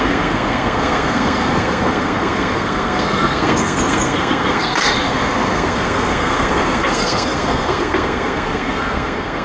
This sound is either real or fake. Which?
fake